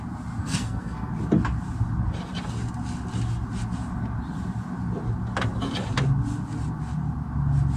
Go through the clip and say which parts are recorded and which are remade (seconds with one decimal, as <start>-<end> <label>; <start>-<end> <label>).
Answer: 0.0-0.4 recorded; 0.4-1.1 remade; 1.1-7.8 recorded

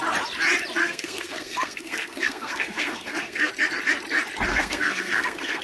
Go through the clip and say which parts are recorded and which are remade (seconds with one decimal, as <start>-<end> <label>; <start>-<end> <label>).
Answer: 0.0-0.8 recorded; 0.8-3.5 remade; 3.5-4.5 recorded; 4.5-5.6 remade

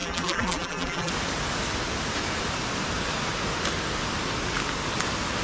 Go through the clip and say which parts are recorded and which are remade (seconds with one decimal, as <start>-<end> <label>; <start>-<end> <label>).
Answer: 0.0-1.1 remade; 1.1-5.4 recorded

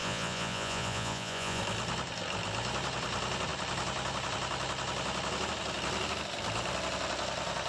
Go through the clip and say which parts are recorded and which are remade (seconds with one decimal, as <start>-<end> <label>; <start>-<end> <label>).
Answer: 0.0-1.6 remade; 1.6-7.7 recorded

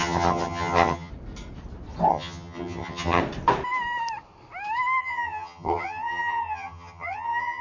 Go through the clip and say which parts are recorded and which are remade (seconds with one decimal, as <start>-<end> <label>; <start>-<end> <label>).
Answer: 0.0-1.1 remade; 1.1-2.1 recorded; 2.1-3.2 remade; 3.2-5.0 recorded; 5.0-7.6 remade

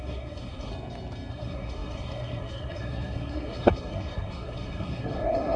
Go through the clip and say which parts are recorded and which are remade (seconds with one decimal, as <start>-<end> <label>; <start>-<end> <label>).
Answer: 0.0-0.7 remade; 0.7-1.3 recorded; 1.3-5.6 remade

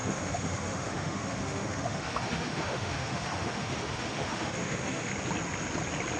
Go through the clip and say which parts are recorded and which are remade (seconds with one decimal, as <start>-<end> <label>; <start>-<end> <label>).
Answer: 0.0-5.1 remade; 5.1-6.2 recorded